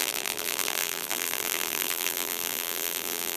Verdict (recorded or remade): remade